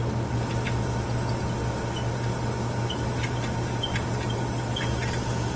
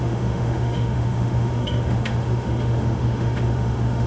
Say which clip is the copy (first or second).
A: second